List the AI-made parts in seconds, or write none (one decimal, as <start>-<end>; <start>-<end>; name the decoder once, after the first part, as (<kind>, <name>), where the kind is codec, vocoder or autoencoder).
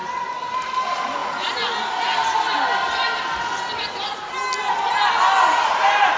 none